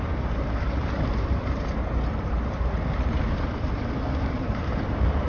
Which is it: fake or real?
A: fake